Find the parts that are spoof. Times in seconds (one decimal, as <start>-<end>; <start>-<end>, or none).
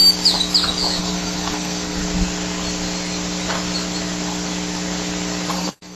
1.0-2.0; 5.5-5.9